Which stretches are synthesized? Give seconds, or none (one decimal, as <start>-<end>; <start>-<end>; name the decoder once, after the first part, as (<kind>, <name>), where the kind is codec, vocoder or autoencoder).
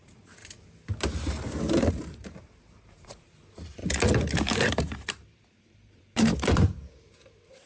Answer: 0.0-0.4 (vocoder, BigVGAN v2); 1.9-3.8; 4.8-7.7